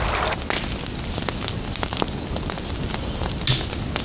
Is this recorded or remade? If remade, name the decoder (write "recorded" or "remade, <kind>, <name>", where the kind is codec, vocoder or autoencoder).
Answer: recorded